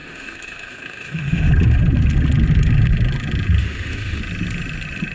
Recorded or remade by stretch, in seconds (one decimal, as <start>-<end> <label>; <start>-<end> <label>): 0.0-1.5 remade; 1.5-3.6 recorded; 3.6-4.2 remade; 4.2-5.1 recorded